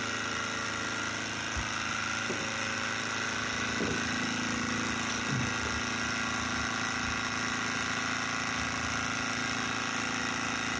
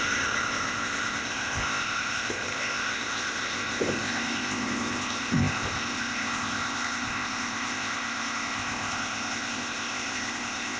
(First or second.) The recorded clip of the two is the first